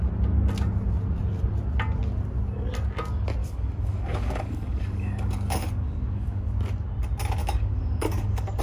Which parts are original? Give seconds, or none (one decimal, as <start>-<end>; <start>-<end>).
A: 0.0-3.4; 6.5-7.4